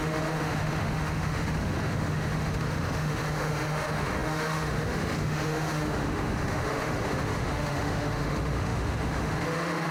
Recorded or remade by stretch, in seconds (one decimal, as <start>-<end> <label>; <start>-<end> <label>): 0.0-9.9 remade